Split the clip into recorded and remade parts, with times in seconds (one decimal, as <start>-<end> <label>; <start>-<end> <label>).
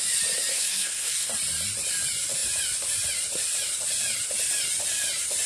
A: 0.0-0.5 recorded; 0.5-1.3 remade; 1.3-5.5 recorded